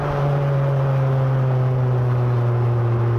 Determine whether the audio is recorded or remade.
recorded